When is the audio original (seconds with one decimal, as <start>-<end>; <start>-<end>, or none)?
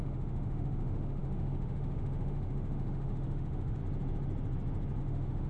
3.8-5.0